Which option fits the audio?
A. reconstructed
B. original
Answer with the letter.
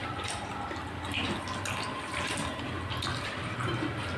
B